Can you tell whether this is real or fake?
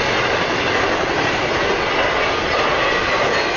real